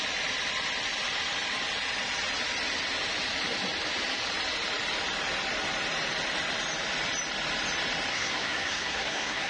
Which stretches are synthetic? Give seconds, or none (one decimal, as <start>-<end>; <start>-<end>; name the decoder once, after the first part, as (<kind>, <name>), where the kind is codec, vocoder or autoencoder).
8.1-9.5 (codec, SNAC)